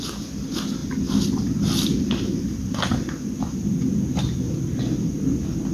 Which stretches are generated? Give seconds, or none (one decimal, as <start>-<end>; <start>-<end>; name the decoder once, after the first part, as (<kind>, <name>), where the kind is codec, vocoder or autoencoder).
none